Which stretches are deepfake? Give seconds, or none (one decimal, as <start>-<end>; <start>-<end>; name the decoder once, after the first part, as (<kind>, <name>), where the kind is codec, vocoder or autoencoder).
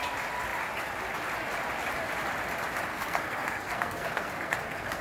2.9-5.0 (codec, SNAC)